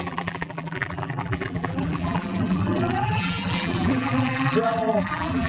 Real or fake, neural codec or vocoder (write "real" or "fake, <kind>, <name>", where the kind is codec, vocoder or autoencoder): fake, vocoder, BigVGAN v2